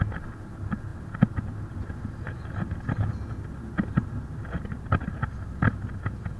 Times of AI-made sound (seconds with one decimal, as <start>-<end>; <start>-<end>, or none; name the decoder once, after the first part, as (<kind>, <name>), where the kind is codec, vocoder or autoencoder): none